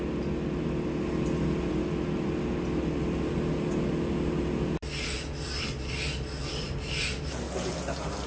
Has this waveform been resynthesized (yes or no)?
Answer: no